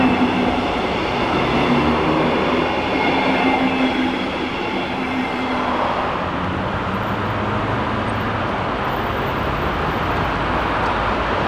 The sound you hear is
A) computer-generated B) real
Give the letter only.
B